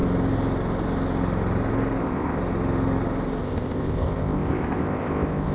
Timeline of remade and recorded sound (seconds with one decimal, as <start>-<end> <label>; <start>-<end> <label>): 0.0-2.0 recorded; 2.0-2.4 remade; 2.4-3.4 recorded; 3.4-5.5 remade